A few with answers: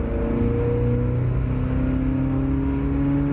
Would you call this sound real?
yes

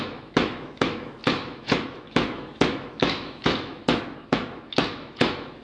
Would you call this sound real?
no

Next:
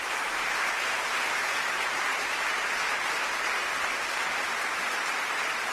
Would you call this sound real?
yes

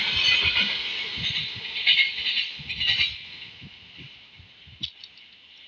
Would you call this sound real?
yes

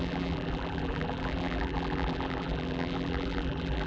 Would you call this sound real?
no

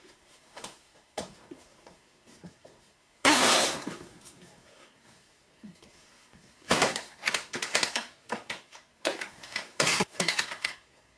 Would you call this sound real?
no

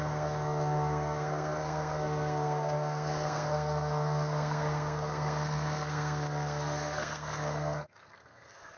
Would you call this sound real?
no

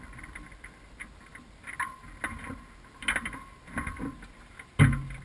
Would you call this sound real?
yes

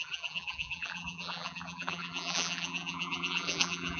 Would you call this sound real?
no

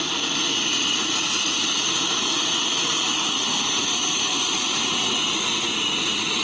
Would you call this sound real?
no